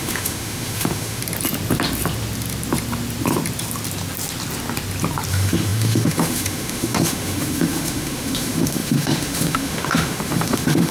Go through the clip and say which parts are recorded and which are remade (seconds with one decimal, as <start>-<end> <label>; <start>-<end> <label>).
0.0-1.2 remade; 1.2-5.3 recorded; 5.3-10.9 remade